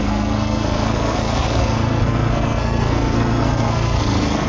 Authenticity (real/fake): fake